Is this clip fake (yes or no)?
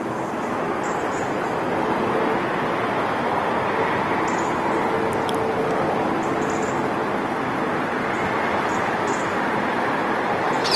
no